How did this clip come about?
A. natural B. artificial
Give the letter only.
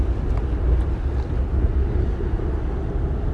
A